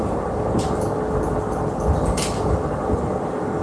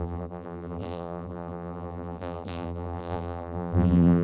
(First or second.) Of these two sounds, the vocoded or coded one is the second